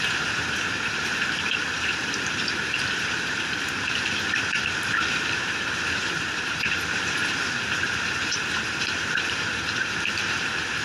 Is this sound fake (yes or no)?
yes